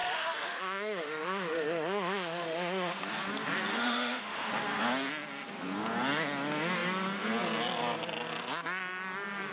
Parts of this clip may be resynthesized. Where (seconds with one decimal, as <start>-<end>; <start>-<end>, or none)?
0.0-3.0; 3.7-4.5

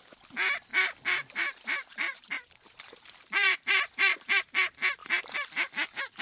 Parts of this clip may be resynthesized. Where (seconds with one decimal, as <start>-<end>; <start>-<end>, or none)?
0.7-4.4; 5.0-6.2